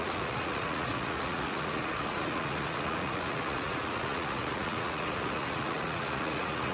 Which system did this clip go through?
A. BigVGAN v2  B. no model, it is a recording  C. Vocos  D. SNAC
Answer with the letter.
C